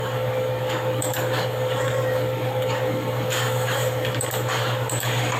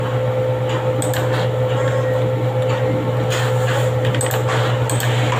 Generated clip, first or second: first